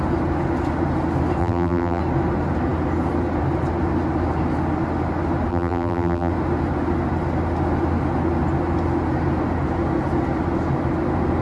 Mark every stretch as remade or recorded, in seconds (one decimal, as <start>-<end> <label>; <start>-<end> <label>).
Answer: 0.0-1.4 recorded; 1.4-2.0 remade; 2.0-5.5 recorded; 5.5-6.3 remade; 6.3-11.4 recorded

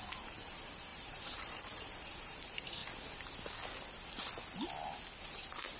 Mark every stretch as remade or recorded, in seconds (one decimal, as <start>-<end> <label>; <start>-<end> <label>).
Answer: 0.0-2.8 remade; 2.8-5.2 recorded; 5.2-5.8 remade

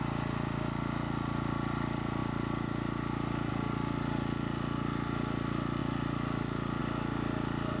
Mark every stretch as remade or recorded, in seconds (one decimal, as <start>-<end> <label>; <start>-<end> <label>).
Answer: 0.0-2.2 recorded; 2.2-3.5 remade; 3.5-5.8 recorded; 5.8-6.8 remade; 6.8-7.8 recorded